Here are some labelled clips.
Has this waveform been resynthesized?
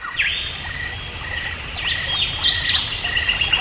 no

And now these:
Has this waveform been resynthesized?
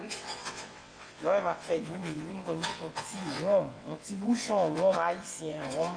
yes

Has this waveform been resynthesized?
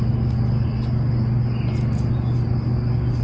no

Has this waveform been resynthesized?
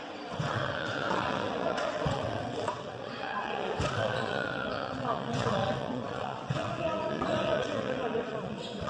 yes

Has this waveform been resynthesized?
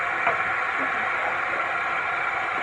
no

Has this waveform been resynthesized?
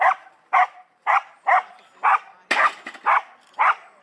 no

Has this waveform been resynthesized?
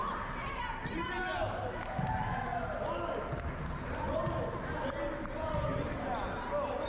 no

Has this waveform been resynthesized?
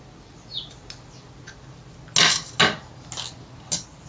no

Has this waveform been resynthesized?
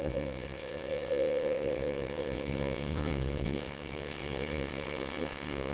yes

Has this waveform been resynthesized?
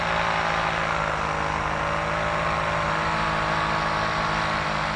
no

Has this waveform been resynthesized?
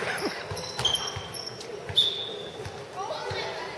no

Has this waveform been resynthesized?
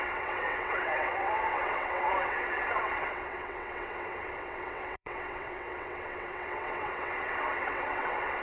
yes